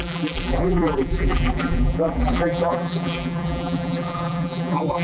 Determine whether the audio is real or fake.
fake